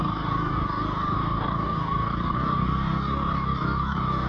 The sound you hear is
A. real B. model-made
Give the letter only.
B